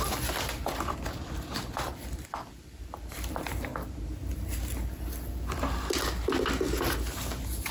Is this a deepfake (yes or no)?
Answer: no